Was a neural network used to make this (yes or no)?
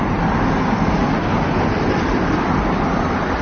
yes